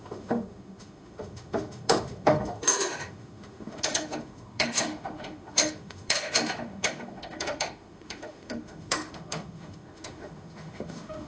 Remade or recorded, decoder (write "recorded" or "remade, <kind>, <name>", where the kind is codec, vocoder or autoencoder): remade, autoencoder, DAC-VAE